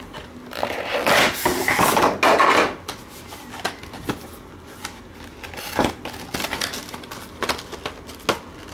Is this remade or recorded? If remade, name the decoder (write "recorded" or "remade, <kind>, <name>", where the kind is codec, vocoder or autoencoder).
recorded